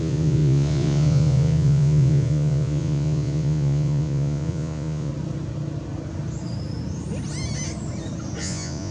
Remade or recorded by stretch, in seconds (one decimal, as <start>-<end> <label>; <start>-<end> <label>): 0.0-5.1 remade; 5.1-8.4 recorded; 8.4-8.9 remade